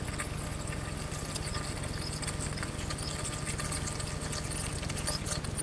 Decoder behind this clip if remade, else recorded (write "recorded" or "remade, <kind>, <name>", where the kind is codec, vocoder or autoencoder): recorded